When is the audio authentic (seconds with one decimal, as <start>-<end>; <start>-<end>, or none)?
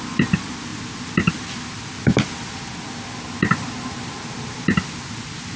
0.0-5.6